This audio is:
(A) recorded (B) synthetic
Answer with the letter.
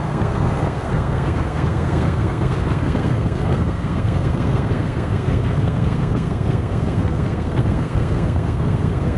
B